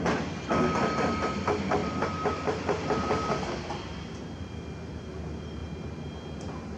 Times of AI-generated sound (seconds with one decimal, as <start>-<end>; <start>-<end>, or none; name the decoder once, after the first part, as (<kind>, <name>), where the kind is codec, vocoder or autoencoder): 1.8-3.7 (vocoder, BigVGAN v2)